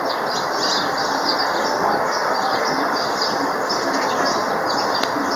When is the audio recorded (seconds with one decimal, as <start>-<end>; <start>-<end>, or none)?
0.0-5.4